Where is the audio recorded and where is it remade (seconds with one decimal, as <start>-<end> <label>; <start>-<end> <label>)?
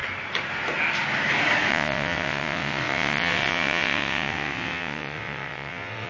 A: 0.0-1.7 recorded; 1.7-6.1 remade